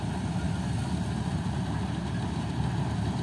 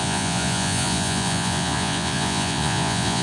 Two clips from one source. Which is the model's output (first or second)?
second